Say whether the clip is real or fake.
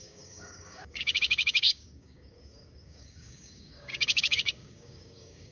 fake